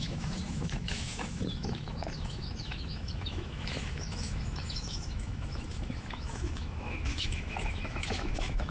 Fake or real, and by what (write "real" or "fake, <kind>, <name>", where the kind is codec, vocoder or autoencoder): fake, autoencoder, DAC-VAE